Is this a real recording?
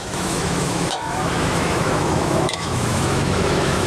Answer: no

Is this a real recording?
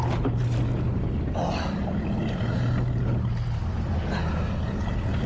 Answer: yes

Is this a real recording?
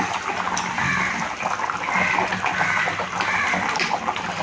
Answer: yes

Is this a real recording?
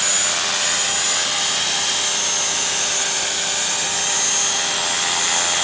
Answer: yes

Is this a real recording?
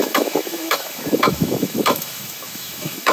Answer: no